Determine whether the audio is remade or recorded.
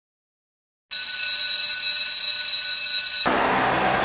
recorded